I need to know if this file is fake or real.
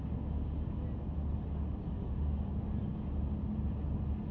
real